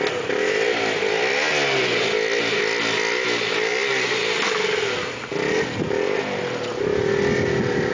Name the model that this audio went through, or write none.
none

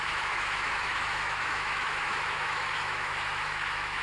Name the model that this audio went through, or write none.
autoencoder, DAC-VAE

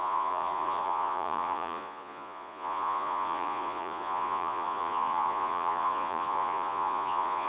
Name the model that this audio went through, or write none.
vocoder, Vocos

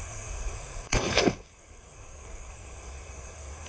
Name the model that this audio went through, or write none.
codec, SNAC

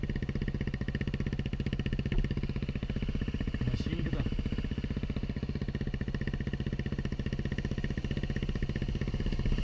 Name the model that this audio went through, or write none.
none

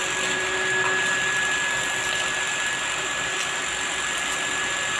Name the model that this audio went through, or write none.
none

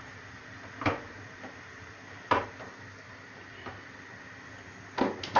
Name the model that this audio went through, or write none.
none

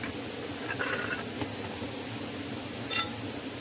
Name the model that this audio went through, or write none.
none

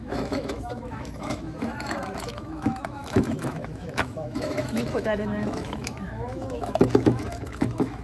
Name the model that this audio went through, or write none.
autoencoder, DAC-VAE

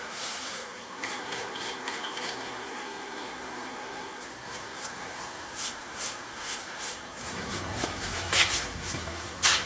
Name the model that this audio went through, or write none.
codec, SNAC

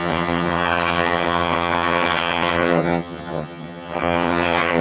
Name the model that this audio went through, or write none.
vocoder, HiFi-GAN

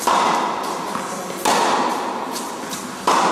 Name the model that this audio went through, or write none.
none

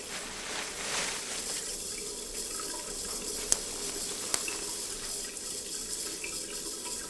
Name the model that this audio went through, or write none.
none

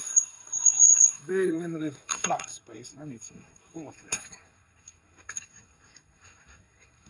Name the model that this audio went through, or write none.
codec, SNAC